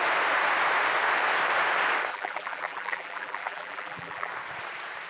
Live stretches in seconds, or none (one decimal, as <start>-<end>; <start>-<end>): 0.0-2.1; 4.3-5.1